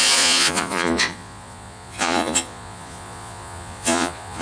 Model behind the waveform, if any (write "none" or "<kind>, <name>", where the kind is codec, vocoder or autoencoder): vocoder, Vocos